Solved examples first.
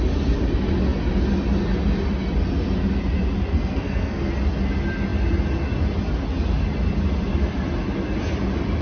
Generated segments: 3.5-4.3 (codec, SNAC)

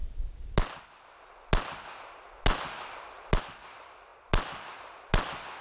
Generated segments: none